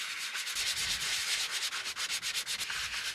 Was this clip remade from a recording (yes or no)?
no